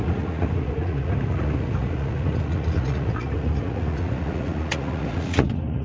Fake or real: fake